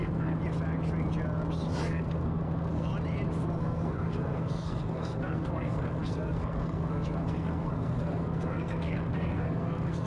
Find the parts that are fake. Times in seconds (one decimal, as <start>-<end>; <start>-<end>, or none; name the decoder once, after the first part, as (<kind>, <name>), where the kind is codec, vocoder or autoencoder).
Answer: 0.0-0.4 (codec, SNAC); 1.8-2.9; 3.6-10.1